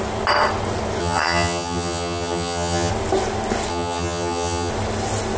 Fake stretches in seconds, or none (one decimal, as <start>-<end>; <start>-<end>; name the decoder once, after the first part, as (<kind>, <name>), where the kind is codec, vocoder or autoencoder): 1.0-2.9 (vocoder, HiFi-GAN); 3.7-4.7